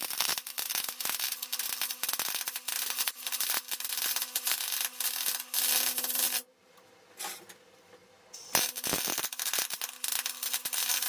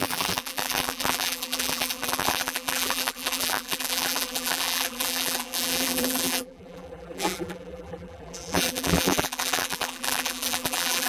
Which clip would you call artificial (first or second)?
second